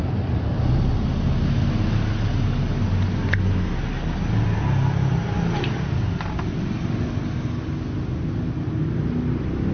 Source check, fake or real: real